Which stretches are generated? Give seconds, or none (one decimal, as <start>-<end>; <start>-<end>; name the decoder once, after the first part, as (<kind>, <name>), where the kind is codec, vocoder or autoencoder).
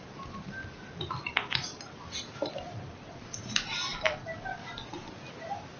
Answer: 1.6-3.2 (vocoder, BigVGAN v2)